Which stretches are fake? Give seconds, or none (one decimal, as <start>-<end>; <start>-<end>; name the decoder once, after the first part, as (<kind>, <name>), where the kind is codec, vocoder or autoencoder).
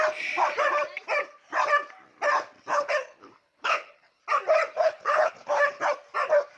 2.7-4.2 (codec, HILCodec); 4.8-5.8